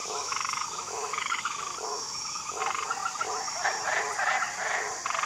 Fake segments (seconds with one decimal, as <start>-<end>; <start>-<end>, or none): 0.0-2.6